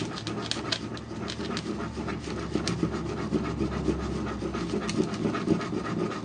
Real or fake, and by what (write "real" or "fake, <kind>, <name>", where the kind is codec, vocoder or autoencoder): real